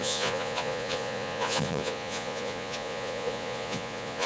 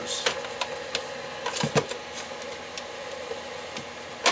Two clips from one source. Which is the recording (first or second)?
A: second